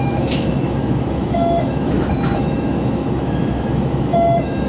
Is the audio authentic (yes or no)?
no